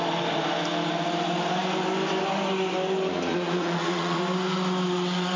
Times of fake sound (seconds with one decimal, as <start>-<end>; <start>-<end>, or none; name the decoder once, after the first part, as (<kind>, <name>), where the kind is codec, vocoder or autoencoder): 3.3-4.2 (vocoder, Vocos)